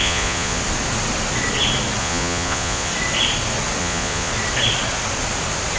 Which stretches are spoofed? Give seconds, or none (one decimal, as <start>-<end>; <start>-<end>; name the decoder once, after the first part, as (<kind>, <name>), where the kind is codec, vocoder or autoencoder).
0.0-0.6 (vocoder, Vocos); 2.0-2.9; 3.8-4.3